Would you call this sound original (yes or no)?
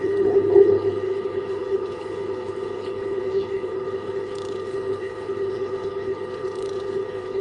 no